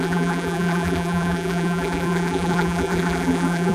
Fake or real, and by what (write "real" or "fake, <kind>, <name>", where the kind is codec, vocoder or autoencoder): fake, vocoder, BigVGAN v2